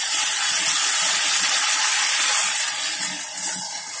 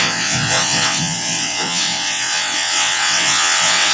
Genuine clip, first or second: first